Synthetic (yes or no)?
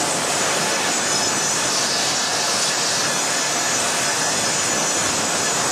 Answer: no